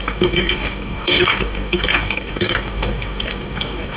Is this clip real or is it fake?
fake